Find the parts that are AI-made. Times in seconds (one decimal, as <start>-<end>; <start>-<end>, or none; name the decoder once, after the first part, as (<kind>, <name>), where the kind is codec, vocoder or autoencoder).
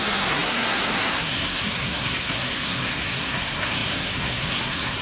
0.0-5.0 (codec, SNAC)